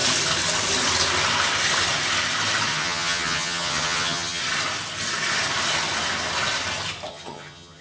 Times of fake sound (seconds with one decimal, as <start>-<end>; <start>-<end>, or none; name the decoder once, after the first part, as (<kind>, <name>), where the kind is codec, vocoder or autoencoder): 2.7-4.4 (vocoder, HiFi-GAN); 7.1-7.8